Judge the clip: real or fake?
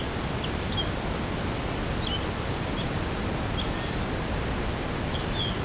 real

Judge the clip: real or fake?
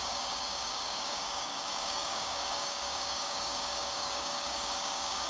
fake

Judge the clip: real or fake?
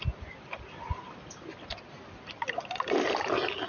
real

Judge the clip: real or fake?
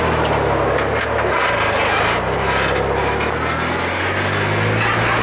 real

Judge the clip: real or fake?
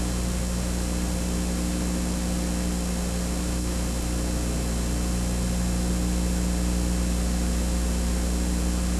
real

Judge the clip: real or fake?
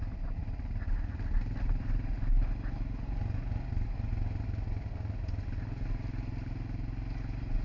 real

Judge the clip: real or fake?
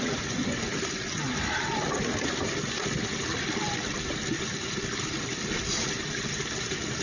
real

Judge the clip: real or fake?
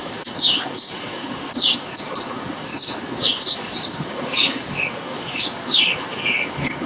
fake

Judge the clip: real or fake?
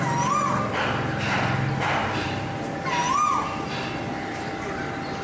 real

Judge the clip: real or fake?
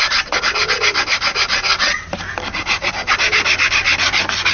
real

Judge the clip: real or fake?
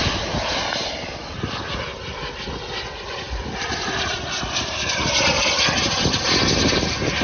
real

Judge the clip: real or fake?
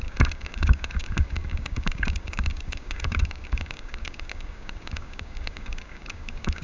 fake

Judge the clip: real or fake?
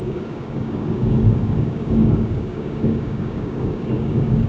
fake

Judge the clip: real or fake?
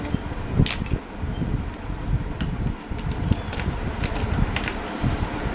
real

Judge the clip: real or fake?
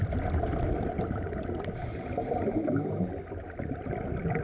real